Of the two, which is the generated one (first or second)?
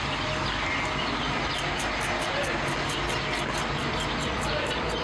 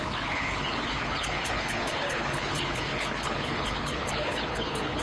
second